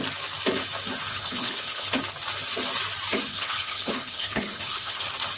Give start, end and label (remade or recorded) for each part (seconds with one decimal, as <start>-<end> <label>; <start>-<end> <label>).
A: 0.0-1.1 recorded; 1.1-2.0 remade; 2.0-3.3 recorded; 3.3-5.0 remade; 5.0-5.4 recorded